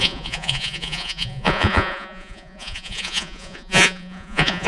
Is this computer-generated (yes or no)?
yes